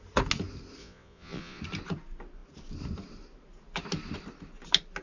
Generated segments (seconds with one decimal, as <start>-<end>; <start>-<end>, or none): 0.8-1.6